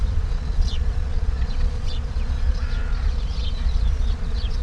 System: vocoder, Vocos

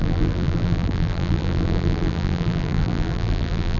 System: vocoder, BigVGAN v2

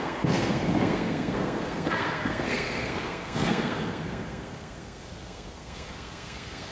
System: codec, SNAC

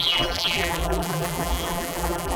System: vocoder, BigVGAN v2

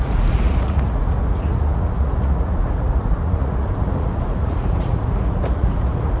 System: vocoder, Vocos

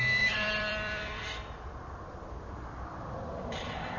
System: vocoder, BigVGAN v2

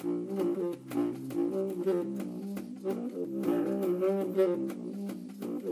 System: none